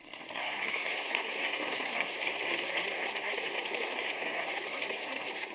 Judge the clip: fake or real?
fake